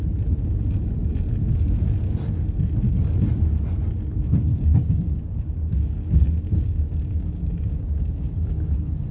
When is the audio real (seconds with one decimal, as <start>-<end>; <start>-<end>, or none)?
0.0-4.5